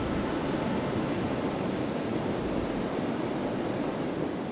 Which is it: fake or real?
fake